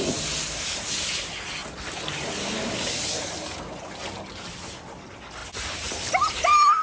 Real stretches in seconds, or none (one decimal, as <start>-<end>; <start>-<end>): 0.0-6.8